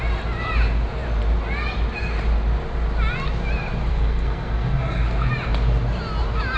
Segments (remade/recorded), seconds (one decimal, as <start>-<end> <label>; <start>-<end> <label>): 0.0-3.9 recorded; 3.9-5.3 remade; 5.3-6.6 recorded